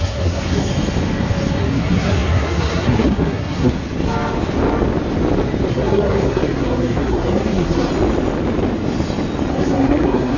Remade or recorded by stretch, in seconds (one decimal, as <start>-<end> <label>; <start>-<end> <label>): 0.0-0.7 remade; 0.7-1.6 recorded; 1.6-3.8 remade; 3.8-5.7 recorded; 5.7-7.9 remade; 7.9-9.5 recorded; 9.5-10.4 remade